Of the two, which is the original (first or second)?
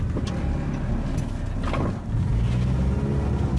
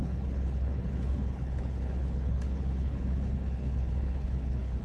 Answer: first